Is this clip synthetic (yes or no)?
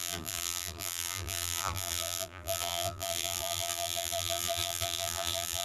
yes